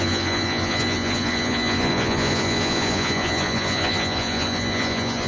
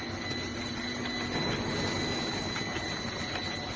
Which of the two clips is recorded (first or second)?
second